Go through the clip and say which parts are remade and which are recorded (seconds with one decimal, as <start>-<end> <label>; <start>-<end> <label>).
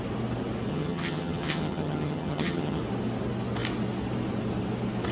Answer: 0.0-0.7 recorded; 0.7-2.8 remade; 2.8-5.1 recorded